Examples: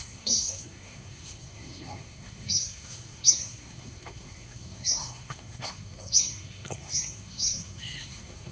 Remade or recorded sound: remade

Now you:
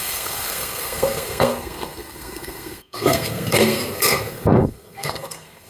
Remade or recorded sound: remade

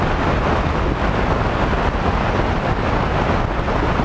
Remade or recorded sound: recorded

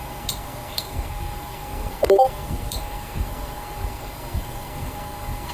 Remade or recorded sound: remade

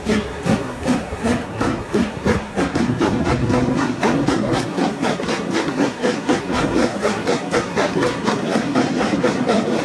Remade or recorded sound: remade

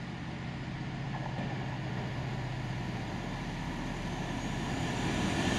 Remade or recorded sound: recorded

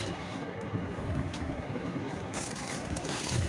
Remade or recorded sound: remade